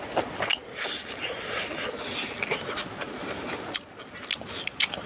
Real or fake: real